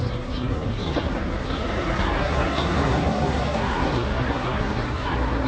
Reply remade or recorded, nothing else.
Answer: remade